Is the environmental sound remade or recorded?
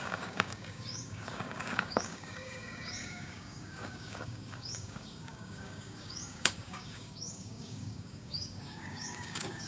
remade